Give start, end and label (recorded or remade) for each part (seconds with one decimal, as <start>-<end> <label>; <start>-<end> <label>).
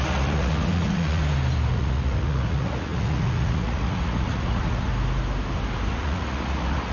0.0-1.2 remade; 1.2-1.7 recorded; 1.7-4.9 remade; 4.9-5.9 recorded; 5.9-6.9 remade